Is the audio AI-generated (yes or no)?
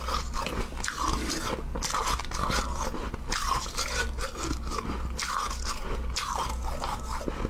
no